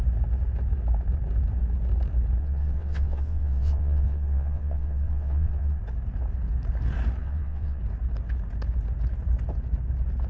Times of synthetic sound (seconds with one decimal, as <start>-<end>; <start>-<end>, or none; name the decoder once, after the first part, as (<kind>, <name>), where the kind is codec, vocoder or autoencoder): 2.4-5.8 (vocoder, WaveNeXt); 7.2-7.8